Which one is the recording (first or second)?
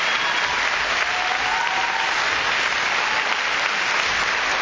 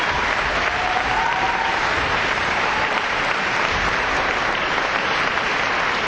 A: first